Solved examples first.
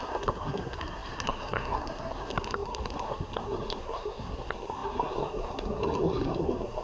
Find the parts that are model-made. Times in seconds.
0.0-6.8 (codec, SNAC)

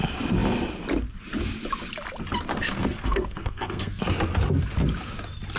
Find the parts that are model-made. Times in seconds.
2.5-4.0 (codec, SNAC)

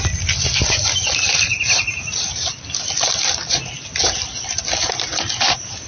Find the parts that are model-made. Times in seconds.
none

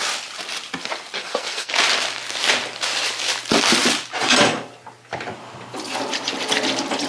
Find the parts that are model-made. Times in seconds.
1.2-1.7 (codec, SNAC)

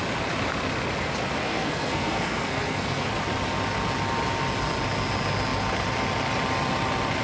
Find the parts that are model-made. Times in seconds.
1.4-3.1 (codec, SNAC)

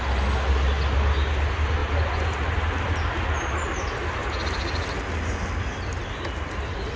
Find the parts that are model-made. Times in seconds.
none